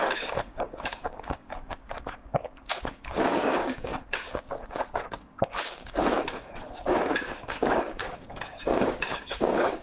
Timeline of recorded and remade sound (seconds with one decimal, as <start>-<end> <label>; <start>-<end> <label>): 0.0-9.8 remade